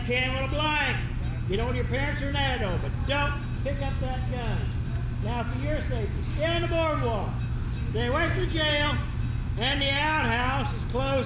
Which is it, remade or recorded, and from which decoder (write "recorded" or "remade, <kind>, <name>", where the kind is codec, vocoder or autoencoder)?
recorded